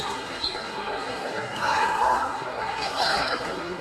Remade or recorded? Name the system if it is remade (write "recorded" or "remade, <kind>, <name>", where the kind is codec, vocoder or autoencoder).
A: remade, codec, SNAC